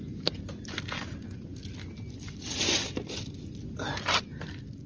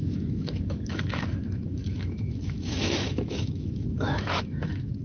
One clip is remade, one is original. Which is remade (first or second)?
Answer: second